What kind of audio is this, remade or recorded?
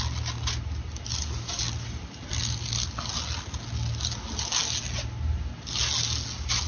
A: recorded